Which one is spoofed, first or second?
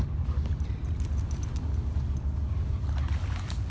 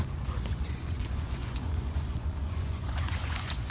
second